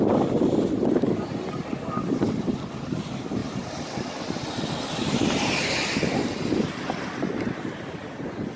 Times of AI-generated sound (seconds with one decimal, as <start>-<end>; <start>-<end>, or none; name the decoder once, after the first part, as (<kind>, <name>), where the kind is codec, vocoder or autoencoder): none